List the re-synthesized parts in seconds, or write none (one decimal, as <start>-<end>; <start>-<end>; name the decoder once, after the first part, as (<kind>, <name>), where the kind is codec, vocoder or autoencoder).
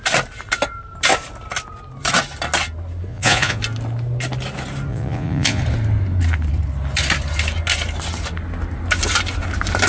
3.1-3.6 (vocoder, Vocos); 4.9-5.6